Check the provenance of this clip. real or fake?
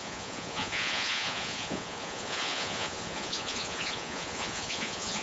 fake